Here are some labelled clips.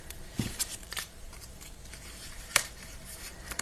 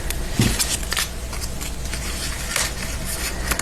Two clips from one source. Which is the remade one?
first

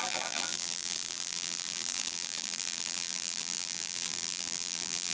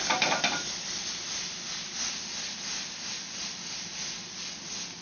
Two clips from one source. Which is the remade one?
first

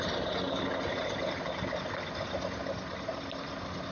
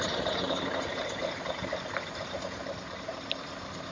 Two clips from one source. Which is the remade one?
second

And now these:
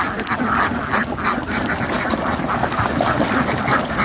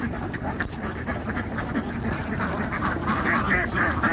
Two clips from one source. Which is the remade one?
second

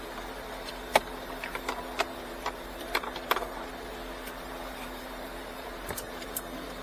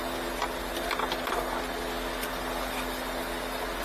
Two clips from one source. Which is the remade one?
first